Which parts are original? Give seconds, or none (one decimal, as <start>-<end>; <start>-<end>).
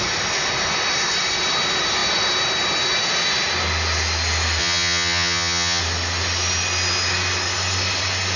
0.0-4.6; 5.8-8.4